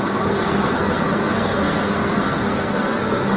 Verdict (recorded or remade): remade